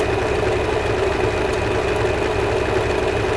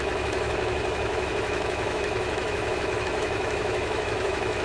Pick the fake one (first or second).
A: second